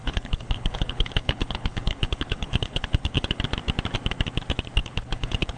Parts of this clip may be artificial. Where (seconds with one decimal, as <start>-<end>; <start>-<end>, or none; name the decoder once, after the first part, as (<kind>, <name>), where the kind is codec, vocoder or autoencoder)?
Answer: 0.0-3.4 (codec, HILCodec); 4.8-5.6